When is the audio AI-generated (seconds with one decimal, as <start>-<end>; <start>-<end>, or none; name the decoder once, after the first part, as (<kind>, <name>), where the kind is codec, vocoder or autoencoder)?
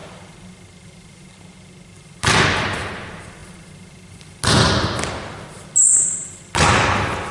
none